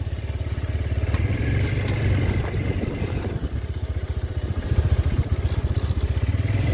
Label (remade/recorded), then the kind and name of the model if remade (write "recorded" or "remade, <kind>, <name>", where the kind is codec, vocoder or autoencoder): remade, vocoder, BigVGAN v2